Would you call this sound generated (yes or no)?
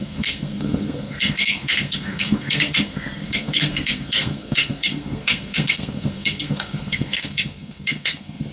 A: yes